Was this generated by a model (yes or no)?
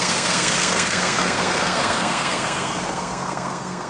yes